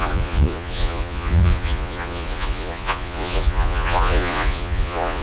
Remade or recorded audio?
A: remade